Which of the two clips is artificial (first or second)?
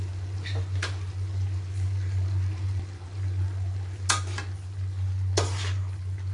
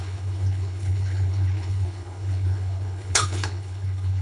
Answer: second